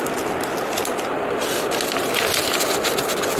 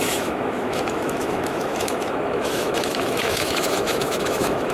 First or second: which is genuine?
first